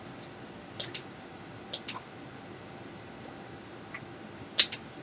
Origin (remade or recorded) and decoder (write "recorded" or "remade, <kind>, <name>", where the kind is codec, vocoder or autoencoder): recorded